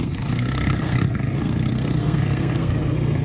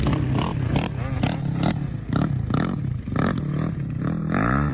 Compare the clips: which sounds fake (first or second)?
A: first